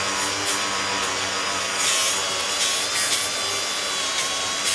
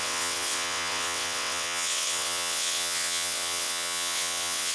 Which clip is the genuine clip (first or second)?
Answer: first